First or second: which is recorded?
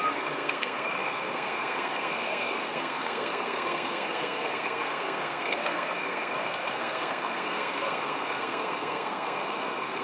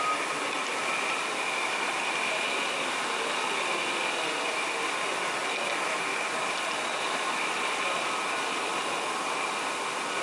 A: second